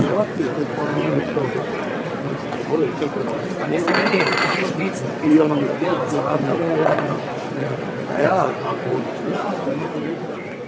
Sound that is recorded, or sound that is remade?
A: remade